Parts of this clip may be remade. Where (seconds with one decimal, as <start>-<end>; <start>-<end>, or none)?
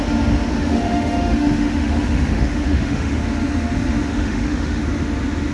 0.5-3.2; 4.1-4.8